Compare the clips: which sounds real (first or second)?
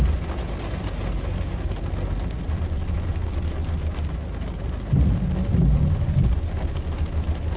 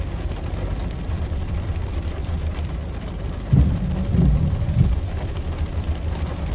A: first